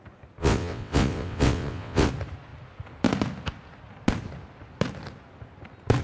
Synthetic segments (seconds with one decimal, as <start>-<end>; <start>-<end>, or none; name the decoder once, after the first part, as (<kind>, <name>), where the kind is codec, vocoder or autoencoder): 0.4-2.1 (vocoder, WaveNeXt)